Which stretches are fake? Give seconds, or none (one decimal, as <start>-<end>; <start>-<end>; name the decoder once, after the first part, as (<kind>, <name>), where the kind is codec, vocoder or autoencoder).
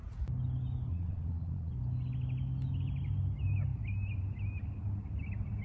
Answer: 0.9-1.7 (vocoder, Vocos)